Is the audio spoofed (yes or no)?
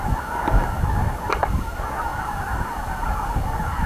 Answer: yes